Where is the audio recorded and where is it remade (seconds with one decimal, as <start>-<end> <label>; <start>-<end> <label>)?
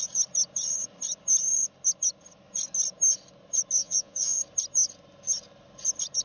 0.0-3.8 recorded; 3.8-4.4 remade; 4.4-6.2 recorded